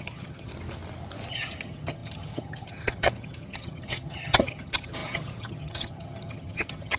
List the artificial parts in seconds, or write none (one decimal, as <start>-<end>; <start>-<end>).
0.0-0.5; 1.3-7.0